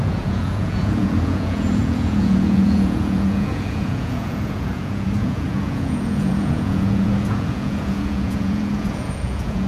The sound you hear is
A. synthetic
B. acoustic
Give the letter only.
A